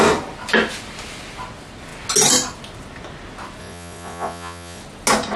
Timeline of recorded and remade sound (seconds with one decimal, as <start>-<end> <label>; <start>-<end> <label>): 0.0-3.6 recorded; 3.6-4.8 remade; 4.8-5.4 recorded